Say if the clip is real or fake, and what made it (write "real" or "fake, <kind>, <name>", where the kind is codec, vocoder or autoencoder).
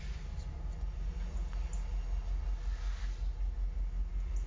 real